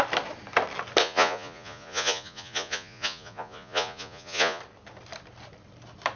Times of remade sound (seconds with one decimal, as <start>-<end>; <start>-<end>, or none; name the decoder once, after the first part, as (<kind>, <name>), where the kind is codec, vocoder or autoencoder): 1.0-4.6 (vocoder, Vocos)